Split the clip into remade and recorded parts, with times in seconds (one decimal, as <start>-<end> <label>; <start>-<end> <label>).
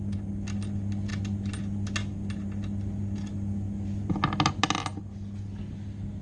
0.0-6.2 recorded